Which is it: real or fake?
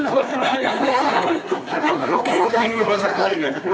fake